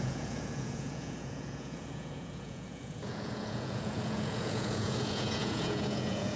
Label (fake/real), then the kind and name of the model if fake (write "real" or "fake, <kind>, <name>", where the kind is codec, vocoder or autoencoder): fake, vocoder, Vocos